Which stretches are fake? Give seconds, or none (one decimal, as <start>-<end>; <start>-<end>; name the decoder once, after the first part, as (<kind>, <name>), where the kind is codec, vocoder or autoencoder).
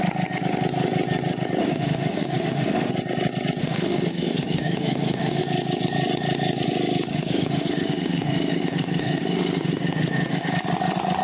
1.6-2.9 (autoencoder, DAC-VAE); 3.6-5.4; 7.1-10.5